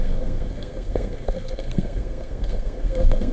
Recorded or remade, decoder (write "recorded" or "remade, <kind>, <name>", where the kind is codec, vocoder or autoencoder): remade, codec, SNAC